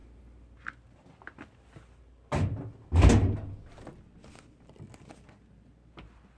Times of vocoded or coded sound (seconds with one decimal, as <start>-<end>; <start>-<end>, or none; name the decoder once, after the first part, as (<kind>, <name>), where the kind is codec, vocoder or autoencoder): none